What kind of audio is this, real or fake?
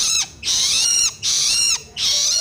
fake